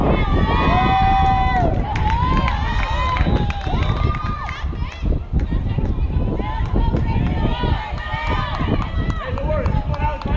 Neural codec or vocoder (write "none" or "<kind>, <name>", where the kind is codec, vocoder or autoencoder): none